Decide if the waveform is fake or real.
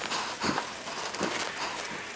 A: real